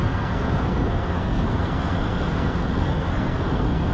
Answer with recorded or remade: remade